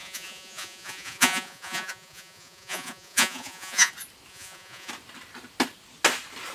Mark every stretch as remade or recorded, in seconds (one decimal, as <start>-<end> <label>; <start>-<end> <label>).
0.0-3.9 remade; 3.9-4.3 recorded; 4.3-4.9 remade; 4.9-6.5 recorded